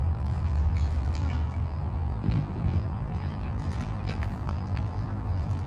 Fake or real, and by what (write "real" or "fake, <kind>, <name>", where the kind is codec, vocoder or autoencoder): fake, vocoder, BigVGAN v2